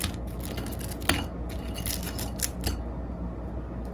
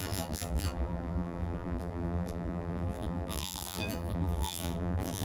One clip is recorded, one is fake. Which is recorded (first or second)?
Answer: first